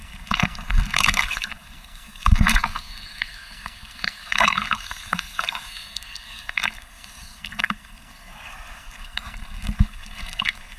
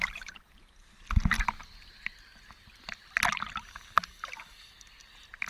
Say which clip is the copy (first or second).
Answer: first